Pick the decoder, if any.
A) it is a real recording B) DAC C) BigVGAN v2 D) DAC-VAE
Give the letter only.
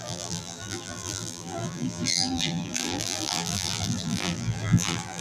C